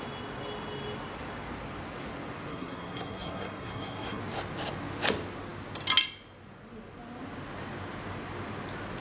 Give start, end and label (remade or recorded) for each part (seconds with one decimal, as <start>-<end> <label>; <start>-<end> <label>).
0.0-2.5 recorded; 2.5-4.2 remade; 4.2-9.0 recorded